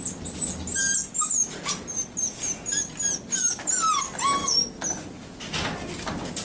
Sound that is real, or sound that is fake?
real